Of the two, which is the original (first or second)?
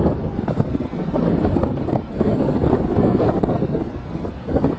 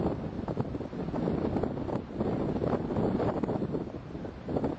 second